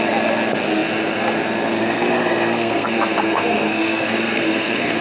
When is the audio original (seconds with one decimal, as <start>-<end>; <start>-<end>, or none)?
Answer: 0.0-1.8